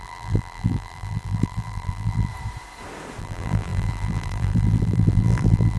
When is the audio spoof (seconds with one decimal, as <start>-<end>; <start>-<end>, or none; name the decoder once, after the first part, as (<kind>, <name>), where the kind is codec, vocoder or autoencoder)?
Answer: 0.0-2.3 (vocoder, BigVGAN v2); 3.2-5.8